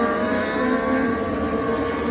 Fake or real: real